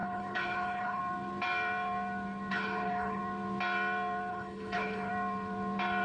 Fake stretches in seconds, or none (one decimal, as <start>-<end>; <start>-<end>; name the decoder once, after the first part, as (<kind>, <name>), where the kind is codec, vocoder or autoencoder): 0.0-1.0 (codec, HILCodec); 2.5-3.2; 4.3-5.1